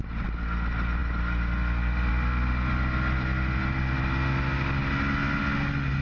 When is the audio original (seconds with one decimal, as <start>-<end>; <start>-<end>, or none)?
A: 0.0-6.0